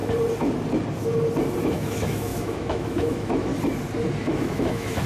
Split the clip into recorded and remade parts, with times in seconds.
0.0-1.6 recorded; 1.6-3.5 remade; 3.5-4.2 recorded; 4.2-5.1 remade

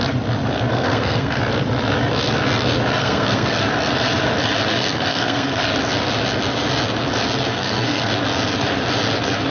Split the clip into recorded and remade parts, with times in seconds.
0.0-0.7 recorded; 0.7-1.4 remade; 1.4-3.0 recorded; 3.0-3.6 remade; 3.6-4.7 recorded; 4.7-5.6 remade; 5.6-7.5 recorded; 7.5-8.1 remade; 8.1-9.5 recorded

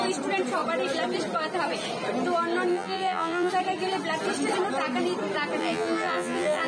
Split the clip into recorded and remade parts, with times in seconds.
0.0-2.7 recorded; 2.7-3.5 remade; 3.5-5.6 recorded; 5.6-6.7 remade

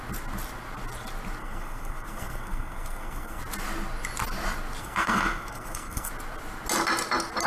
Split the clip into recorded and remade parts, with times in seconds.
0.0-1.4 recorded; 1.4-3.4 remade; 3.4-4.8 recorded; 4.8-6.1 remade; 6.1-7.5 recorded